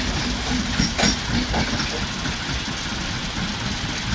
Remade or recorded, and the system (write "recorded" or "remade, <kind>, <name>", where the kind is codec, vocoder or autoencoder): recorded